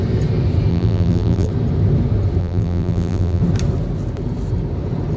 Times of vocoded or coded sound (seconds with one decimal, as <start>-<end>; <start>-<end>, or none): 0.7-1.5; 2.4-3.4